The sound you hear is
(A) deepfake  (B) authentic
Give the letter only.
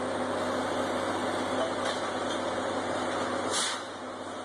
B